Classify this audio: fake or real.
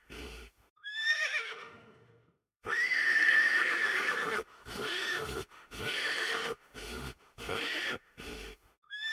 fake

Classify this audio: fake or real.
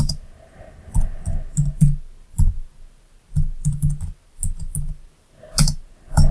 real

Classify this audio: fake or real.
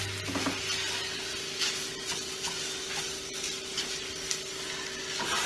real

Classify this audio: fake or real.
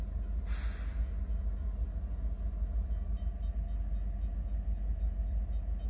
real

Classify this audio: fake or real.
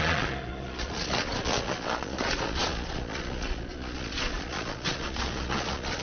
fake